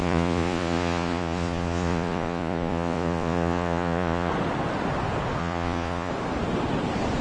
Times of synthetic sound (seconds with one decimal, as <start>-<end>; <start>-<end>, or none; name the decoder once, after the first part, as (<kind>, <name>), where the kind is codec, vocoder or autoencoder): 0.0-4.3 (vocoder, Vocos); 5.4-6.1